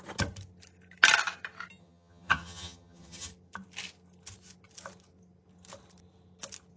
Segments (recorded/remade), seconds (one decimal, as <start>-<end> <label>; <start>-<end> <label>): 0.0-1.8 recorded; 1.8-3.3 remade; 3.3-6.8 recorded